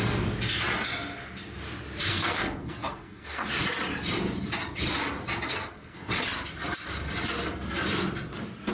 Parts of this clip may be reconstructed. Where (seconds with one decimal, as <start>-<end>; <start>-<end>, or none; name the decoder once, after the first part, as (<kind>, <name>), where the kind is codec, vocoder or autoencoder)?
2.1-3.4 (codec, SNAC); 5.5-6.1